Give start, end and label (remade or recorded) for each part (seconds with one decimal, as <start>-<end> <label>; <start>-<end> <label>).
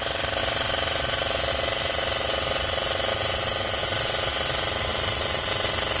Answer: 0.0-4.9 recorded; 4.9-5.5 remade; 5.5-6.0 recorded